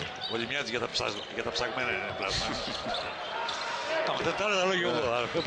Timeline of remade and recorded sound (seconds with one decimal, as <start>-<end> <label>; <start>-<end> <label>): 0.0-5.5 recorded